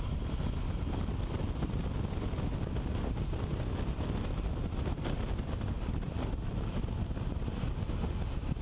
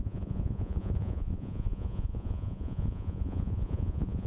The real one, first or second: first